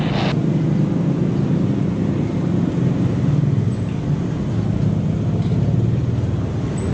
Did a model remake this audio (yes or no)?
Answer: no